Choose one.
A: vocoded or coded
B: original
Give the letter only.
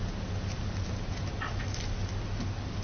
B